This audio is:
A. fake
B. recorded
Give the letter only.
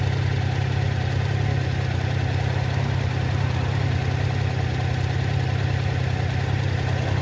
B